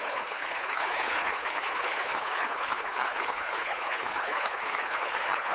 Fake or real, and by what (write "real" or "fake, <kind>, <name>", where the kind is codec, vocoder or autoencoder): fake, codec, HILCodec